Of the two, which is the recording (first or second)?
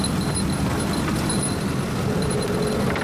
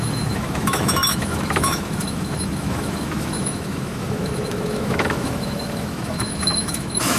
first